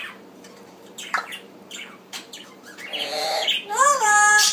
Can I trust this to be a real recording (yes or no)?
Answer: no